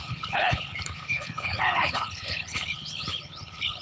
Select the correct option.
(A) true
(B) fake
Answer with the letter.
B